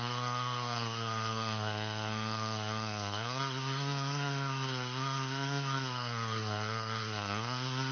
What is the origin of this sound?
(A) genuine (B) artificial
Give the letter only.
B